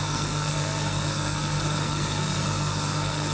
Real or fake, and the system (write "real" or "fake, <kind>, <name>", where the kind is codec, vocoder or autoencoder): fake, codec, SNAC